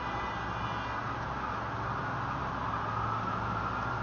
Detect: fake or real real